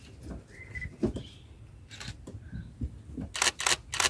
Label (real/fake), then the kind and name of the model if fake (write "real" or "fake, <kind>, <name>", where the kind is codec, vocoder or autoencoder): real